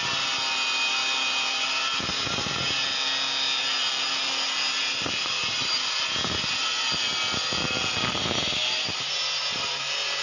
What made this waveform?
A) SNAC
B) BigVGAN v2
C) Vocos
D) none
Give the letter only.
D